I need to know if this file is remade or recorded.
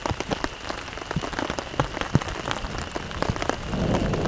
recorded